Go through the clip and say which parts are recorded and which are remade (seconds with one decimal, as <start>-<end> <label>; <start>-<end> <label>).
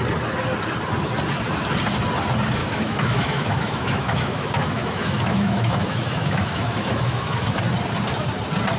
0.0-2.6 recorded; 2.6-7.6 remade; 7.6-8.8 recorded